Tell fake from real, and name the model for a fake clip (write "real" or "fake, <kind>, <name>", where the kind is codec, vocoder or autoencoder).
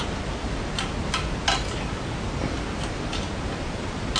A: real